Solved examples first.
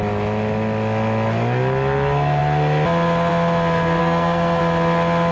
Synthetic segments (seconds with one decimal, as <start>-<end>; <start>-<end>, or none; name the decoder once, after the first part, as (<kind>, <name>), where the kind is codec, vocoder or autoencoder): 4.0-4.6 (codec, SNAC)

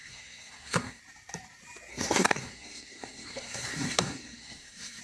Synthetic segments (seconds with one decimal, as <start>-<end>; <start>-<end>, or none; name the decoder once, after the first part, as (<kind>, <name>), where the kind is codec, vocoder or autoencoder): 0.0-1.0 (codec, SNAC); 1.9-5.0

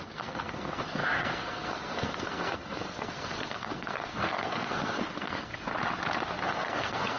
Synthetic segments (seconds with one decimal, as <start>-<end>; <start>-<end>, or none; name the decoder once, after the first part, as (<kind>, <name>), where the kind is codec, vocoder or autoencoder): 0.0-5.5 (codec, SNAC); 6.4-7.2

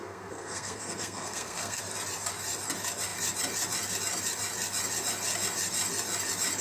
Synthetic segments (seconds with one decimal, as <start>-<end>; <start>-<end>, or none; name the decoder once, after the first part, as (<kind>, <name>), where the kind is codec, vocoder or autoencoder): 0.0-1.8 (codec, SNAC)

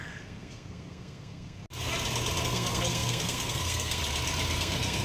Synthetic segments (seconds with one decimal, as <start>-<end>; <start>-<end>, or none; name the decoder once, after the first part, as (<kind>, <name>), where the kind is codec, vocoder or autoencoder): 0.0-1.6 (codec, SNAC); 2.4-4.0; 4.5-5.0